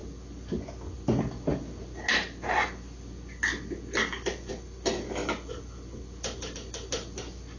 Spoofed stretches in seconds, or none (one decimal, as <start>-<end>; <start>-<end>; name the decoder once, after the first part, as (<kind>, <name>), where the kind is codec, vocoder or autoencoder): none